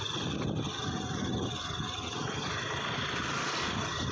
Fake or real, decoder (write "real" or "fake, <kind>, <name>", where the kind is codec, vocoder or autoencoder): real